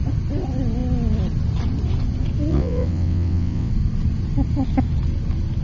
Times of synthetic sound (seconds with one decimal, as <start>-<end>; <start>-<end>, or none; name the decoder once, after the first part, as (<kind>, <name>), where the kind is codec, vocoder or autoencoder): 2.5-3.7 (vocoder, WaveNeXt)